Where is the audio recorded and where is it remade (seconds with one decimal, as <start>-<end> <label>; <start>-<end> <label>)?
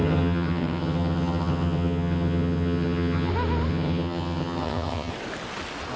0.0-3.3 remade; 3.3-3.7 recorded; 3.7-5.1 remade; 5.1-6.0 recorded